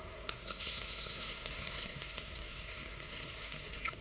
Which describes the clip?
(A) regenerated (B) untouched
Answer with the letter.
A